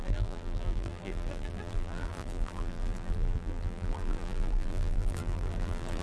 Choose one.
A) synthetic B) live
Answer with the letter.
A